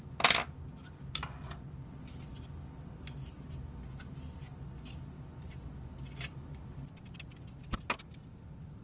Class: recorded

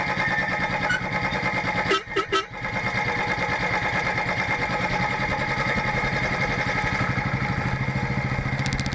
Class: recorded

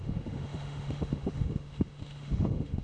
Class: remade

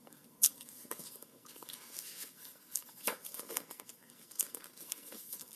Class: remade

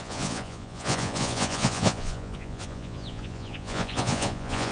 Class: remade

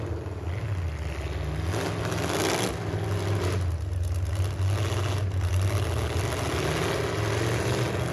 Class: recorded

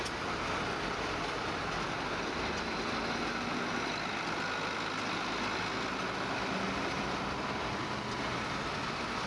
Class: recorded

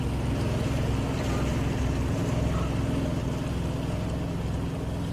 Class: recorded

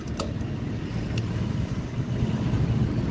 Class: recorded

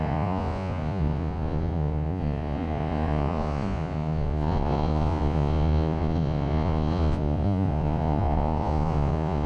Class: remade